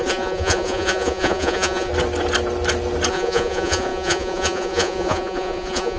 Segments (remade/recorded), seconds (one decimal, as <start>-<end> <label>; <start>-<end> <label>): 0.0-1.9 remade; 1.9-3.1 recorded; 3.1-6.0 remade